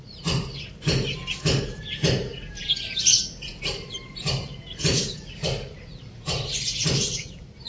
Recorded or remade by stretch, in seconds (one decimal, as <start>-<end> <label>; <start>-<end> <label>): 0.0-7.7 remade

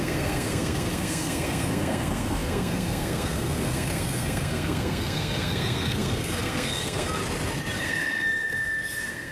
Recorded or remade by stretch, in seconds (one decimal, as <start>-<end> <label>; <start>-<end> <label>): 0.0-7.2 remade; 7.2-7.8 recorded; 7.8-9.3 remade

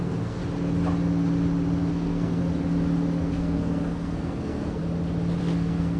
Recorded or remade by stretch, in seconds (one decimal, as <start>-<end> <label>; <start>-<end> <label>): 0.0-0.4 remade; 0.4-1.9 recorded; 1.9-2.4 remade; 2.4-3.2 recorded; 3.2-4.8 remade; 4.8-5.4 recorded; 5.4-6.0 remade

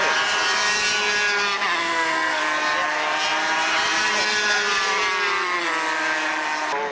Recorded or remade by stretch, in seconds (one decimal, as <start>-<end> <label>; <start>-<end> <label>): 0.0-1.8 recorded; 1.8-2.4 remade; 2.4-6.9 recorded

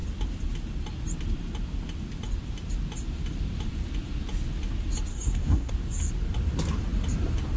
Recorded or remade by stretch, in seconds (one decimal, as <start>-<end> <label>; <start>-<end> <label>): 0.0-5.1 recorded; 5.1-5.7 remade; 5.7-7.6 recorded

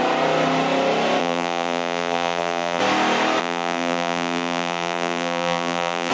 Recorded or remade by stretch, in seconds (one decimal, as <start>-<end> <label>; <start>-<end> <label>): 0.0-1.2 recorded; 1.2-2.8 remade; 2.8-3.4 recorded; 3.4-6.1 remade

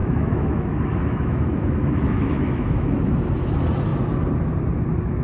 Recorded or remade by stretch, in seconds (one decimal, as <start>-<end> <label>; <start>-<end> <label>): 0.0-3.1 remade; 3.1-5.2 recorded